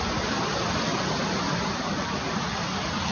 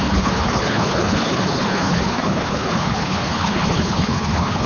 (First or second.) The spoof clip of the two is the second